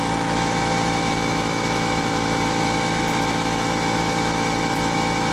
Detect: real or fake fake